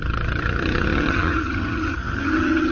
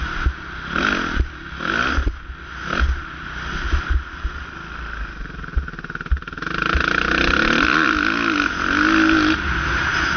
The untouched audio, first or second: second